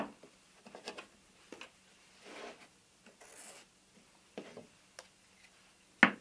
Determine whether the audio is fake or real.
real